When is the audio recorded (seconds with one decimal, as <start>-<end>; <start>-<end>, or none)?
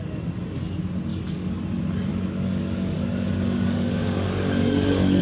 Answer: 0.0-1.1; 1.6-2.1